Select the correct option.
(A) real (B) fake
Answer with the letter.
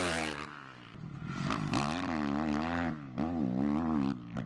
A